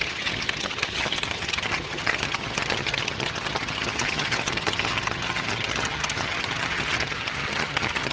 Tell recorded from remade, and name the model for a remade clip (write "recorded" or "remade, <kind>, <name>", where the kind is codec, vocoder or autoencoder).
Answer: remade, vocoder, HiFi-GAN